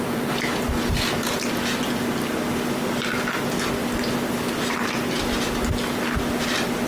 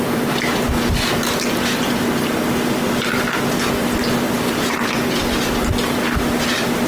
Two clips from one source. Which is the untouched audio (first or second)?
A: first